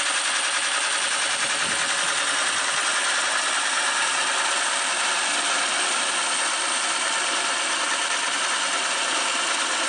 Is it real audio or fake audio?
real